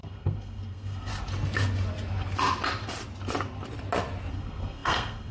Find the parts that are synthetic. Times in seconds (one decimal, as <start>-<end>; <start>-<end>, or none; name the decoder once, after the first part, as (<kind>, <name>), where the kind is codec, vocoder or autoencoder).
0.0-1.1 (codec, SNAC); 4.3-5.3